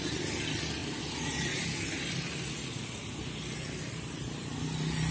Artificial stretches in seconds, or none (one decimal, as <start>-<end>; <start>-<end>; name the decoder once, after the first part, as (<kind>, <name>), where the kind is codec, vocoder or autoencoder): none